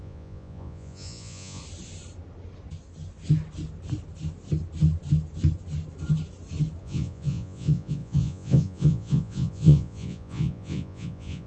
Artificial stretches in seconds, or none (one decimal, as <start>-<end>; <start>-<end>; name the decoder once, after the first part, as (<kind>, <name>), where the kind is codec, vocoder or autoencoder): 0.0-1.6 (vocoder, Vocos); 6.8-11.5